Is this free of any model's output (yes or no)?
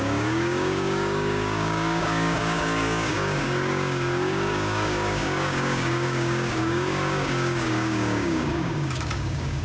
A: no